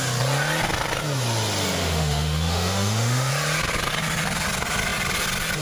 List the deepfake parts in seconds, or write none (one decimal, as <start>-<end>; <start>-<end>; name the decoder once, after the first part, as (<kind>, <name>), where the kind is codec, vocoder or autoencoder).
1.8-3.3 (autoencoder, DAC-VAE)